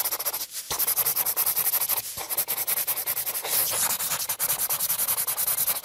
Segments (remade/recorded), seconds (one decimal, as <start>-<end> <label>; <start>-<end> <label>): 0.0-1.1 recorded; 1.1-1.7 remade; 1.7-5.8 recorded